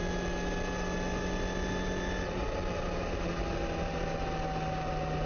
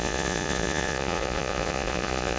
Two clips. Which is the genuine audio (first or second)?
first